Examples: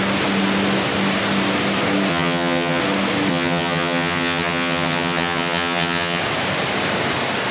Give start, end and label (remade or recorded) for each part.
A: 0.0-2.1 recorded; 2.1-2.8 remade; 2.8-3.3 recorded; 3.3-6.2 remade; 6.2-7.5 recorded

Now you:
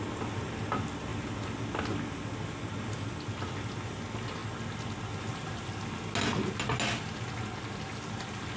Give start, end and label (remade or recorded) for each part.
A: 0.0-8.6 recorded

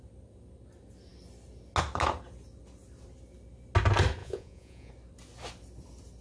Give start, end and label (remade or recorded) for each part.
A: 0.0-4.2 recorded; 4.2-4.9 remade; 4.9-6.2 recorded

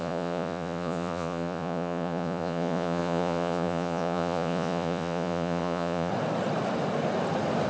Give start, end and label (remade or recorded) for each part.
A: 0.0-6.1 remade; 6.1-7.7 recorded

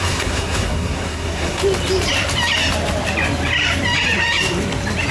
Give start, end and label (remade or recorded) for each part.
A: 0.0-1.6 remade; 1.6-5.1 recorded

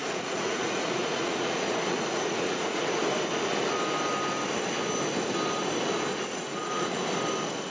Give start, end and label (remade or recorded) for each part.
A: 0.0-3.0 remade; 3.0-6.1 recorded; 6.1-7.0 remade; 7.0-7.7 recorded